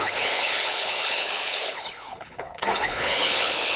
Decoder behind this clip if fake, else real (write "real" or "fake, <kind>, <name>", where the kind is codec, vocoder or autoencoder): fake, codec, HILCodec